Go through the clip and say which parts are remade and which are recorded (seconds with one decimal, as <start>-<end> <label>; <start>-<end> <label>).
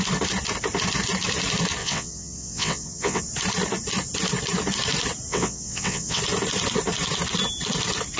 0.0-1.8 recorded; 1.8-3.2 remade; 3.2-5.3 recorded; 5.3-6.2 remade; 6.2-8.2 recorded